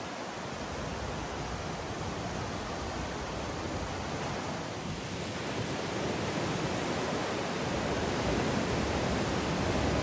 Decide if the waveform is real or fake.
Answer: real